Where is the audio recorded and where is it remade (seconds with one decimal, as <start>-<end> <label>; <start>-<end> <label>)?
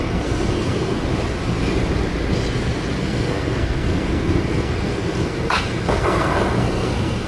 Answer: 0.0-1.1 remade; 1.1-3.0 recorded; 3.0-7.3 remade